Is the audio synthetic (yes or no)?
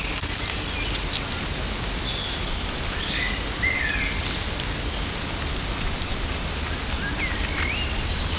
no